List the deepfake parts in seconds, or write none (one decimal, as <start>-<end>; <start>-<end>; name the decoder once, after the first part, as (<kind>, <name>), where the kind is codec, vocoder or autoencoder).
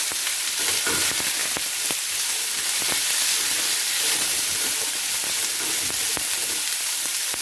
0.0-7.4 (vocoder, BigVGAN v2)